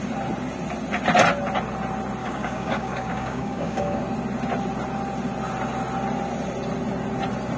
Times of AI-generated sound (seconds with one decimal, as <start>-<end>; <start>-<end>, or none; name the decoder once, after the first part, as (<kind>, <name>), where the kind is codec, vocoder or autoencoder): 2.2-4.0 (codec, DAC)